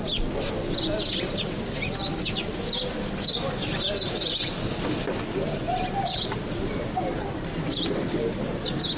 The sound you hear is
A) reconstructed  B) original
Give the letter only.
B